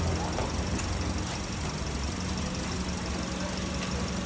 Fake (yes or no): no